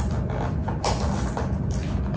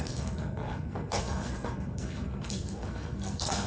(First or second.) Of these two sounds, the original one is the first